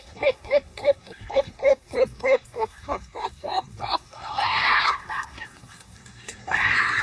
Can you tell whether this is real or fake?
fake